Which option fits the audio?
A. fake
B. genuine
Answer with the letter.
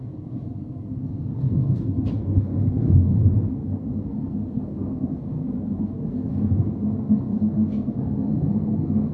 A